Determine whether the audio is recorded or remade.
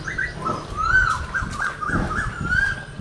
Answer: recorded